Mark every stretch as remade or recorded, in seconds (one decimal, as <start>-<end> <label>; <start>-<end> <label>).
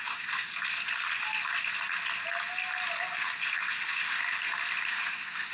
0.0-0.5 remade; 0.5-3.7 recorded; 3.7-4.2 remade; 4.2-4.9 recorded; 4.9-5.5 remade